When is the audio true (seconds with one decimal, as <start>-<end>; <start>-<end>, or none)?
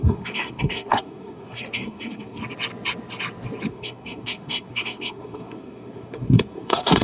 2.4-3.7